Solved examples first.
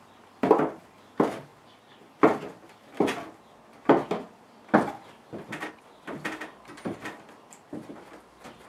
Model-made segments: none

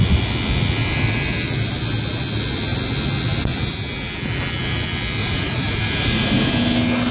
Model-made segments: 5.2-6.5